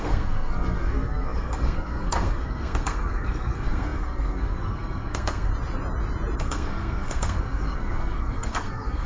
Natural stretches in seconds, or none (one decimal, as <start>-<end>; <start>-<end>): 5.5-6.4